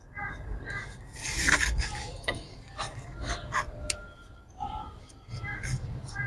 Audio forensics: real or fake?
fake